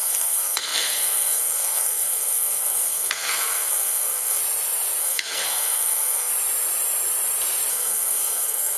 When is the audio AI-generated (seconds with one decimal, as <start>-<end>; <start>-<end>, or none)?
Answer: 0.0-4.4; 5.0-6.3; 7.7-8.8